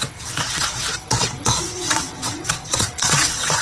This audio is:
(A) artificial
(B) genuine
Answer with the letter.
A